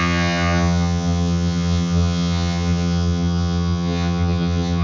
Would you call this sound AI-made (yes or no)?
yes